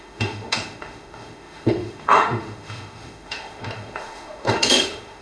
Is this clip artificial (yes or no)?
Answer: yes